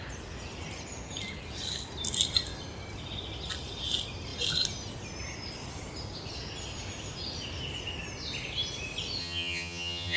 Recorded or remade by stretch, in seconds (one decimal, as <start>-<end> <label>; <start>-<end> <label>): 0.0-9.2 recorded; 9.2-10.2 remade